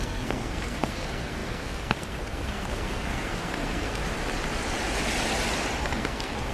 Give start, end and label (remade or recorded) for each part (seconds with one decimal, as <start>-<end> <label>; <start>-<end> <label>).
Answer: 0.0-4.0 remade; 4.0-5.8 recorded; 5.8-6.5 remade